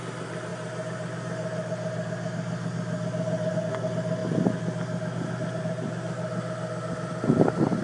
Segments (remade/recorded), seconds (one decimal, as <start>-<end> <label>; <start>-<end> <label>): 0.0-7.8 recorded